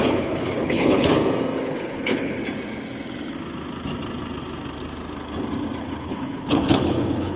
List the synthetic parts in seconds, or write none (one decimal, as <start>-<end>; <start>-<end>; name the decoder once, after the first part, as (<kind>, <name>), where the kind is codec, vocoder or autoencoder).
0.0-1.1 (codec, HILCodec); 1.6-2.4; 5.8-7.4